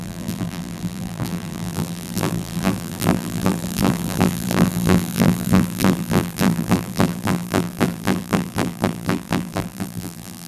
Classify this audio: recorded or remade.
remade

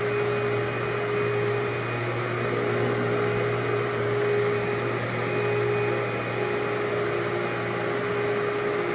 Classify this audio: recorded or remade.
recorded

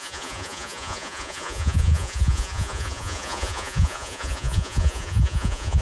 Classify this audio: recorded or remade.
remade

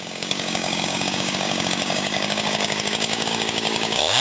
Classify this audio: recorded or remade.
remade